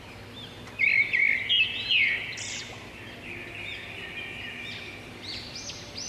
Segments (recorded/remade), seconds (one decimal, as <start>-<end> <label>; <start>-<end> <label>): 0.0-6.1 recorded